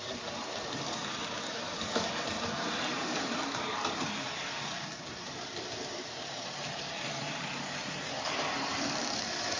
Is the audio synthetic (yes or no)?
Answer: yes